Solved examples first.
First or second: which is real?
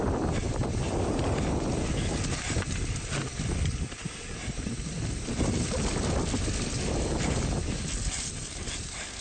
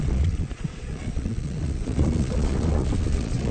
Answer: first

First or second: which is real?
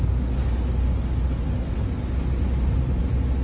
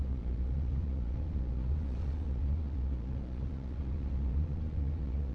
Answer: first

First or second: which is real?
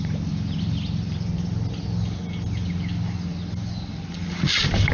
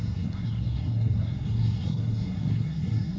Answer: first